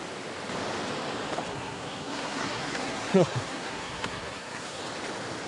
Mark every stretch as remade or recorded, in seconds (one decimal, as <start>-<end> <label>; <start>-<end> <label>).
0.0-1.5 recorded; 1.5-4.8 remade; 4.8-5.5 recorded